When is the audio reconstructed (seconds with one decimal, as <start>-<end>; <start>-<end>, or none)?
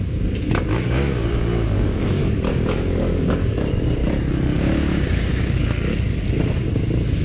0.0-4.0; 4.6-5.6; 6.6-7.2